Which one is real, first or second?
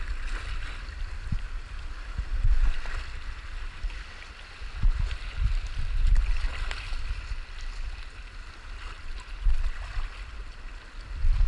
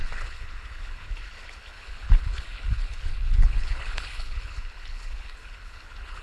first